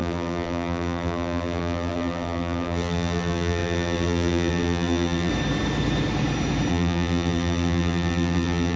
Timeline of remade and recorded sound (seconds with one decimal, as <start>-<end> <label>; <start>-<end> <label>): 0.0-5.3 remade; 5.3-6.7 recorded; 6.7-8.8 remade